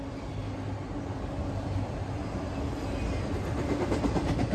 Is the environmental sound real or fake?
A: real